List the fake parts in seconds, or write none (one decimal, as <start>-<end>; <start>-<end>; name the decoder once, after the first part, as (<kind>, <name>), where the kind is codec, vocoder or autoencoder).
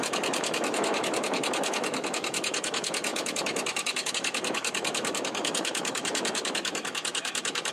0.0-7.7 (autoencoder, DAC-VAE)